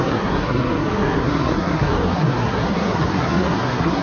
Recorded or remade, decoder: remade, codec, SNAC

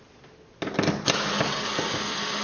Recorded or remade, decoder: recorded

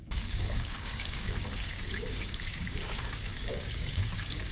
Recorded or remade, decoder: remade, codec, DAC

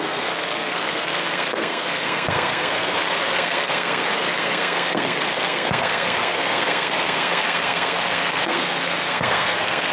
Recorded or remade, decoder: remade, codec, SNAC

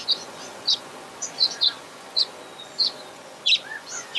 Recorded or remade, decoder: remade, vocoder, Vocos